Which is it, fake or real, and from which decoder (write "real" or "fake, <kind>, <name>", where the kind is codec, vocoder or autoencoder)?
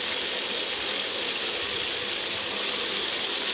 real